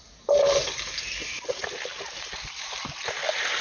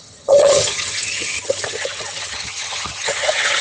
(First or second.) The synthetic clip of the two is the second